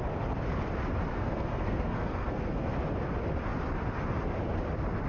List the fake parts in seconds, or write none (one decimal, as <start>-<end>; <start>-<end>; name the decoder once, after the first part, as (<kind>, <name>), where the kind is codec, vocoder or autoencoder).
1.1-2.7 (codec, SNAC)